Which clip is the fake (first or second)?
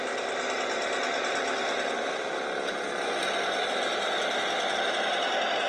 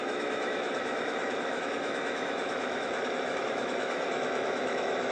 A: second